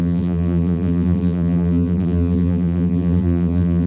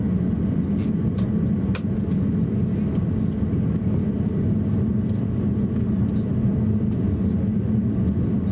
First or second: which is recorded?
second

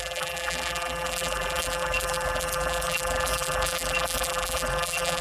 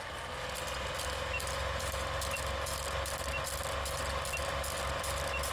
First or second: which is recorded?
second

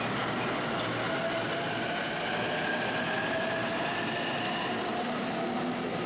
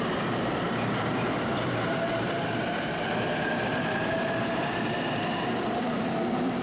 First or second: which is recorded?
first